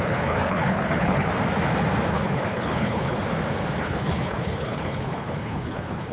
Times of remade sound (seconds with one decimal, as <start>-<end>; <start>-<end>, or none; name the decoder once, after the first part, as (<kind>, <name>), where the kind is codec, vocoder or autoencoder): 0.0-1.3 (codec, HILCodec); 2.1-3.2; 3.8-6.1